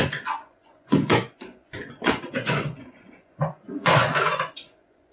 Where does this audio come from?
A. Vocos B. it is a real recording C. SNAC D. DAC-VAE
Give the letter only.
A